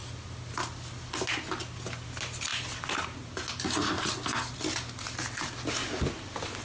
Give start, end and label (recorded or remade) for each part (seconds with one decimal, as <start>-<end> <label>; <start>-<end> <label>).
0.0-6.6 recorded